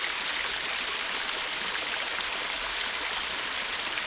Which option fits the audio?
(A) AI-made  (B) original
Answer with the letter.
A